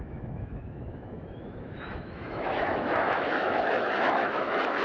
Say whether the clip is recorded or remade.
remade